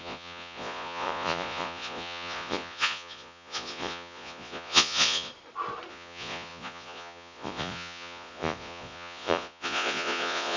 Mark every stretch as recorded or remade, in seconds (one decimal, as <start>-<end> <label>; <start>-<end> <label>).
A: 0.0-5.3 remade; 5.3-5.9 recorded; 5.9-10.6 remade